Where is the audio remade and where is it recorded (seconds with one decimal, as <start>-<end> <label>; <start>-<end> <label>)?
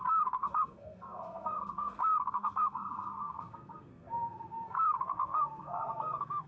0.0-6.5 remade